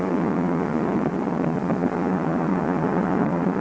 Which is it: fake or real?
fake